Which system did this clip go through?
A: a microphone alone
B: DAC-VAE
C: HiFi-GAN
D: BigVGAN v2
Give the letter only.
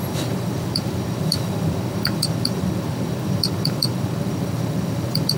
D